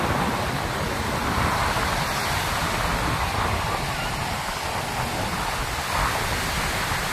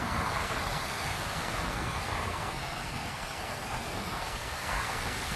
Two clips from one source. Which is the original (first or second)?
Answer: first